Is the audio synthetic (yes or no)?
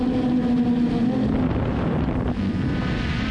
no